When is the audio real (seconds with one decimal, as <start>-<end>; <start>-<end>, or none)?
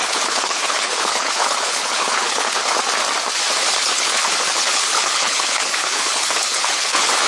2.8-3.6